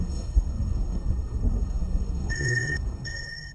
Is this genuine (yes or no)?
no